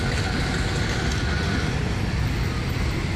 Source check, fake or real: real